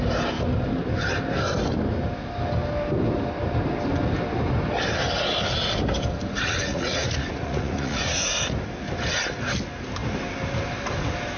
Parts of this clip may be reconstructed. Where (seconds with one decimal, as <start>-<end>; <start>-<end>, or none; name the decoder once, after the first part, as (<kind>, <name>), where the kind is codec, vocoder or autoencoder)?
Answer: 6.3-8.4 (vocoder, Vocos)